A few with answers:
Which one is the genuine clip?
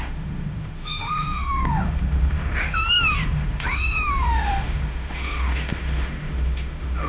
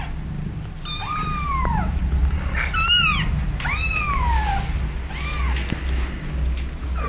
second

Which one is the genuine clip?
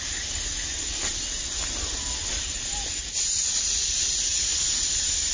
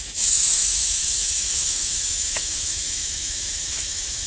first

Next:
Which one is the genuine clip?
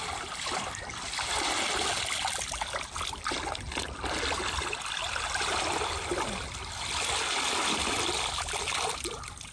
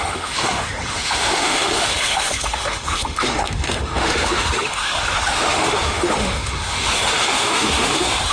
first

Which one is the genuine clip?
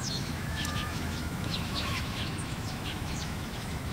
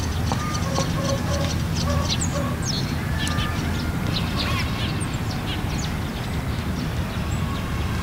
second